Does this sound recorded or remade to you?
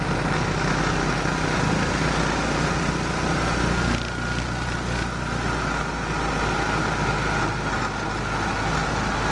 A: recorded